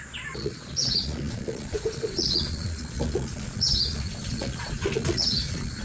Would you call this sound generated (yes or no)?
yes